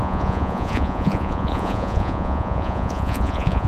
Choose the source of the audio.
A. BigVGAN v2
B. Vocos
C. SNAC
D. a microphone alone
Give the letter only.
B